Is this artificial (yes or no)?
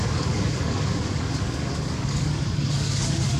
yes